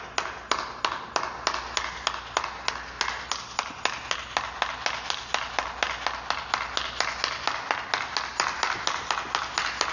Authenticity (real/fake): real